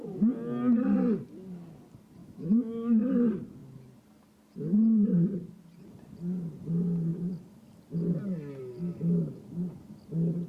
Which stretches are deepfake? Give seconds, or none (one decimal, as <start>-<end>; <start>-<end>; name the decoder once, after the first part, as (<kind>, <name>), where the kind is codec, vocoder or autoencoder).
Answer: 2.2-3.1 (autoencoder, DAC-VAE)